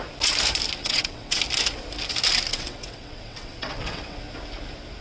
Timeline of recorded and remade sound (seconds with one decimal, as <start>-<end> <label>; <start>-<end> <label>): 0.0-0.8 recorded; 0.8-1.4 remade; 1.4-2.5 recorded; 2.5-4.2 remade; 4.2-5.0 recorded

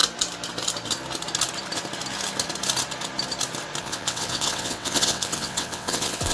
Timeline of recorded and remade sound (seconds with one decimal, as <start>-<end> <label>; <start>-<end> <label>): 0.0-3.8 recorded; 3.8-6.3 remade

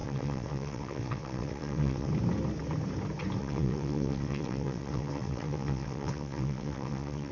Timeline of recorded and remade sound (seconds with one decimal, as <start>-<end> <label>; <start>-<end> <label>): 0.0-2.1 remade; 2.1-3.4 recorded; 3.4-7.3 remade

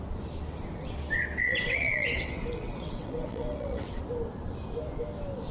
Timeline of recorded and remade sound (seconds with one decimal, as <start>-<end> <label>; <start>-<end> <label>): 0.0-1.4 recorded; 1.4-4.0 remade; 4.0-5.5 recorded

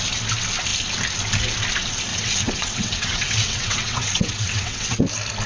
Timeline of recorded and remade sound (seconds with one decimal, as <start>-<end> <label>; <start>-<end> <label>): 0.0-2.1 recorded; 2.1-5.0 remade; 5.0-5.5 recorded

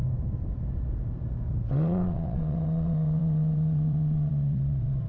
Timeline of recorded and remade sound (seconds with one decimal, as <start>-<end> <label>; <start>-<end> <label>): 0.0-1.7 recorded; 1.7-5.1 remade

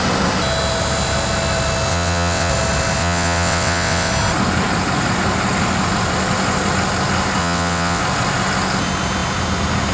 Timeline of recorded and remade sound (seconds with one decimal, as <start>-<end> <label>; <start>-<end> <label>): 0.0-1.9 recorded; 1.9-2.5 remade; 2.5-3.0 recorded; 3.0-4.1 remade; 4.1-7.4 recorded; 7.4-8.0 remade; 8.0-9.9 recorded